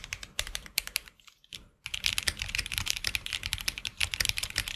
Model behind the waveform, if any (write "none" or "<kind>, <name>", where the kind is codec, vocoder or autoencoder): vocoder, BigVGAN v2